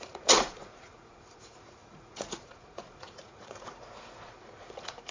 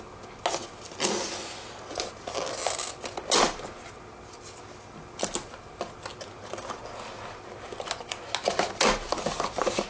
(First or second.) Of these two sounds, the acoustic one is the second